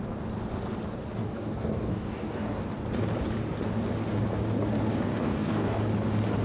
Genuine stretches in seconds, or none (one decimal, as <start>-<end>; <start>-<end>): 0.0-1.2; 2.6-4.9; 5.8-6.4